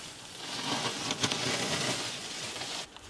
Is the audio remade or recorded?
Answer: remade